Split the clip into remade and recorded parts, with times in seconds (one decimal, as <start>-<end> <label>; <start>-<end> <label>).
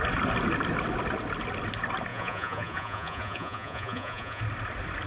0.0-2.1 recorded; 2.1-4.4 remade; 4.4-5.1 recorded